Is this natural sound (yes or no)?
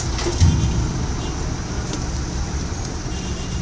yes